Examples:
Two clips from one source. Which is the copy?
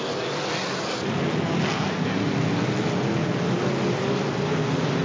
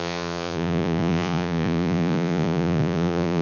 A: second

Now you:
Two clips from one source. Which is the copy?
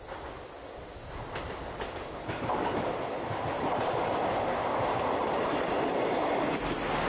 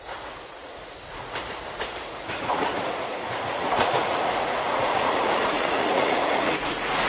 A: second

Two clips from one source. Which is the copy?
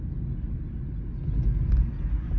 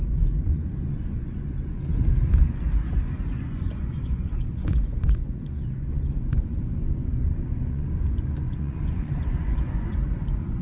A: second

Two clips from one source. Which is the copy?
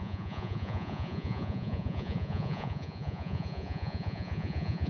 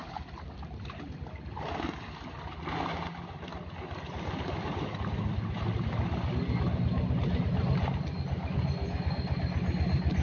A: first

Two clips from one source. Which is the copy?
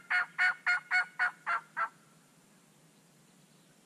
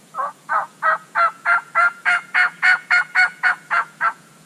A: second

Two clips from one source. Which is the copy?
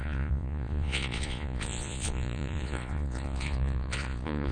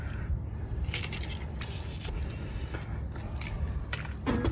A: first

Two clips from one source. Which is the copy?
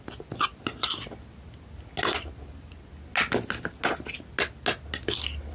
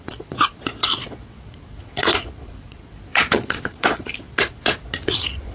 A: second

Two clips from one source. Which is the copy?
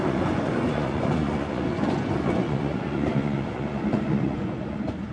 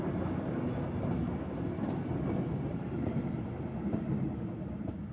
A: first